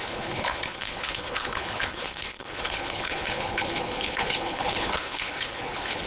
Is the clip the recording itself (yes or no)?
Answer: no